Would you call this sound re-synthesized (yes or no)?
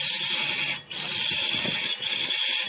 no